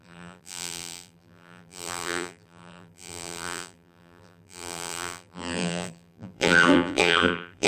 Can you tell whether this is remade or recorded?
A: remade